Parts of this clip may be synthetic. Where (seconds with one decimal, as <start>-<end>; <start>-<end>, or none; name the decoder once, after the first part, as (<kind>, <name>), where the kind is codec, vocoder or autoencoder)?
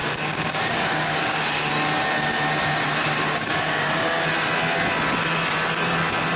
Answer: 0.0-1.7 (codec, DAC); 2.8-3.9